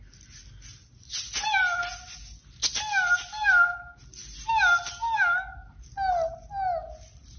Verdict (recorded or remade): recorded